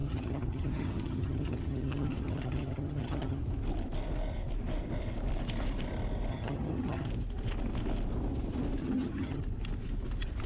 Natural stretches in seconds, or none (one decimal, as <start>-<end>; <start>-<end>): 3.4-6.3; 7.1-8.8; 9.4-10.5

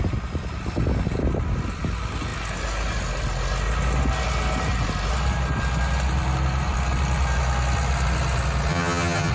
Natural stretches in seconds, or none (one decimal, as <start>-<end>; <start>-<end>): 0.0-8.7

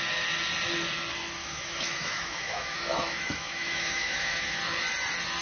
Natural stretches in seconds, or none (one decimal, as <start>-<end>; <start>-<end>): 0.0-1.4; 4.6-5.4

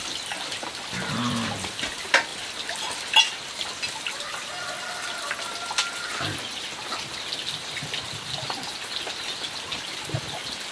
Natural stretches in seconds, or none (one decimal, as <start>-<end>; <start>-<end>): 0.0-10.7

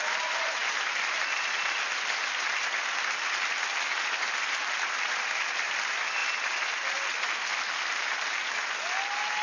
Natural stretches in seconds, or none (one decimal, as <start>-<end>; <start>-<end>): 0.0-9.4